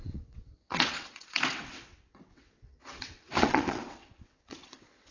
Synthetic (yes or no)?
yes